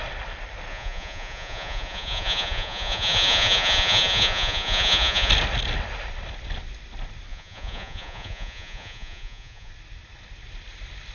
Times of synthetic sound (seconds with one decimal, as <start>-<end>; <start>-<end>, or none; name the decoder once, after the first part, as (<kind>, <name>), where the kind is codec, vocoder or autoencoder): 0.7-5.3 (vocoder, Vocos); 7.3-9.7